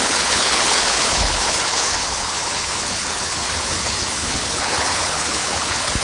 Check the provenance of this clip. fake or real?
fake